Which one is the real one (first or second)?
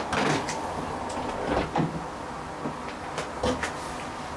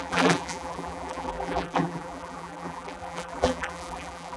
first